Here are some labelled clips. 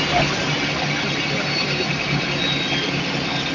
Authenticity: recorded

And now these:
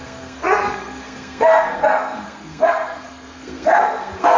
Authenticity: remade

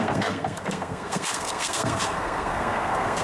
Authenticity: remade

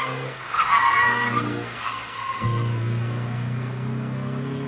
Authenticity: remade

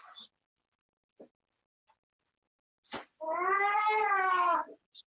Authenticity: recorded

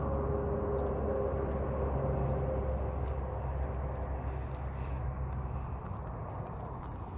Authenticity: recorded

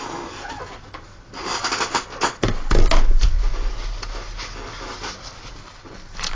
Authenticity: recorded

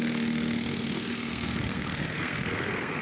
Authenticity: remade